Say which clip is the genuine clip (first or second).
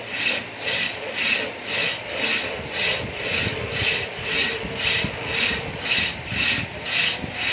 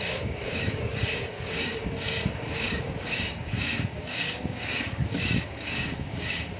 first